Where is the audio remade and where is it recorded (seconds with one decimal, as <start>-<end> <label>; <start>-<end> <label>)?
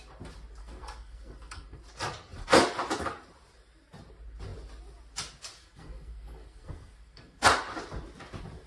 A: 0.0-0.6 recorded; 0.6-1.8 remade; 1.8-5.6 recorded; 5.6-7.4 remade; 7.4-8.7 recorded